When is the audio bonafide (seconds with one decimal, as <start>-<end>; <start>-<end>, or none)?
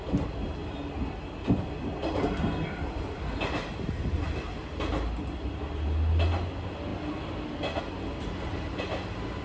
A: 0.0-9.4